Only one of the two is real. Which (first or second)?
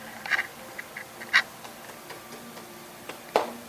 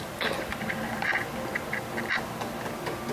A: second